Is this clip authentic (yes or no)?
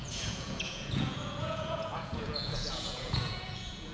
no